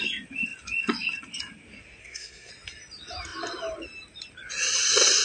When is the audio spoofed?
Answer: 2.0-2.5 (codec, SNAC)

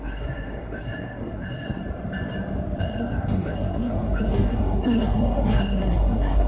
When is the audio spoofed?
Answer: 0.0-1.8 (codec, SNAC); 2.8-6.5